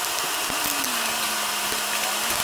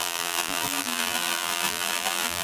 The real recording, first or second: first